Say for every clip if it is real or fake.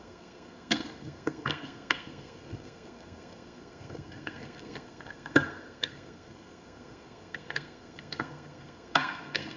fake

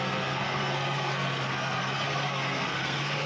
fake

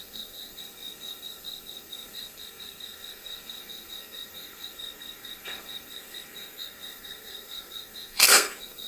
fake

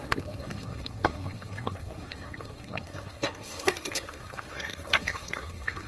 fake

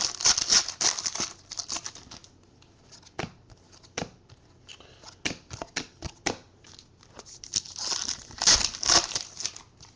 real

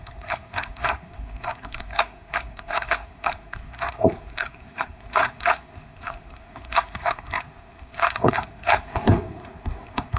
fake